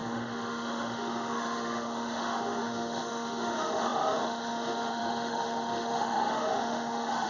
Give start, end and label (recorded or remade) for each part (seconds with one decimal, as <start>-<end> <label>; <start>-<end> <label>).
0.0-7.3 remade